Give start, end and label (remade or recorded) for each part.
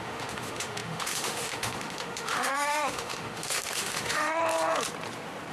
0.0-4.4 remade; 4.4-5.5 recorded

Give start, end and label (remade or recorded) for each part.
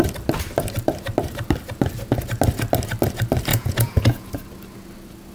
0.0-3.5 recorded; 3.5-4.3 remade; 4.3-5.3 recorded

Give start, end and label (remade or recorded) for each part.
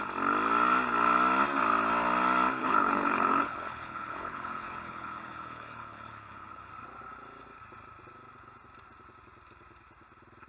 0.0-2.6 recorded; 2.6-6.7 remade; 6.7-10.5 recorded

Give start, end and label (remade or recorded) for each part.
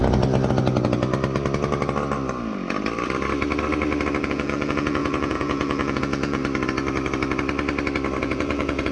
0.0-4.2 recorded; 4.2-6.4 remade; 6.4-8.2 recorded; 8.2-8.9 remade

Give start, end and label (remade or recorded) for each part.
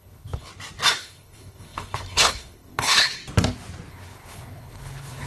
0.0-0.5 remade; 0.5-1.0 recorded; 1.0-3.2 remade; 3.2-3.9 recorded; 3.9-5.3 remade